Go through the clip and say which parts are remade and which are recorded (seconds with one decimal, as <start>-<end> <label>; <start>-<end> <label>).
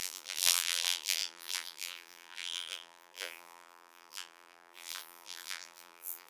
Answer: 0.0-6.3 remade